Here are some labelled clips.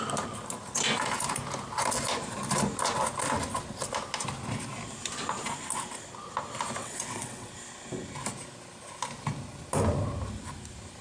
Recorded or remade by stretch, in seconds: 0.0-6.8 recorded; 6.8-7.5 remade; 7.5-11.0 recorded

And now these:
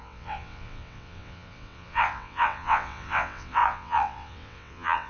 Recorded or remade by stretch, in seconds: 0.0-5.1 remade

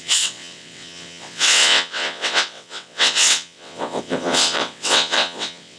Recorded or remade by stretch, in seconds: 0.0-5.8 remade

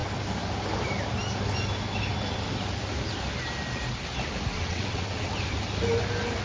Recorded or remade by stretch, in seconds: 0.0-4.5 recorded; 4.5-5.3 remade; 5.3-6.4 recorded

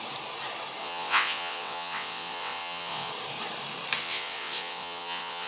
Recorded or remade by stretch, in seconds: 0.0-0.8 recorded; 0.8-3.1 remade; 3.1-4.0 recorded; 4.0-5.5 remade

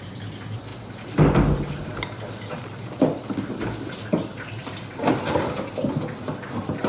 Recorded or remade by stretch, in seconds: 0.0-6.9 recorded

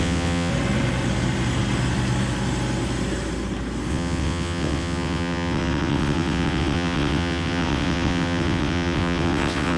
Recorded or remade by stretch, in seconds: 0.0-0.5 remade; 0.5-3.9 recorded; 3.9-9.8 remade

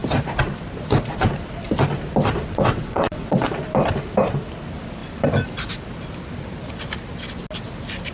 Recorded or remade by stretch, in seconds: 0.0-2.5 recorded; 2.5-3.5 remade; 3.5-8.1 recorded